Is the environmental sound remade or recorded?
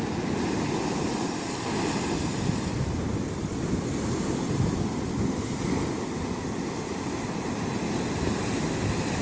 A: recorded